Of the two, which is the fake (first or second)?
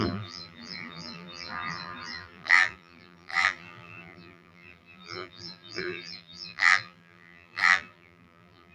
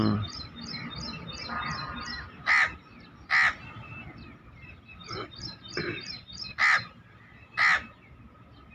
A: first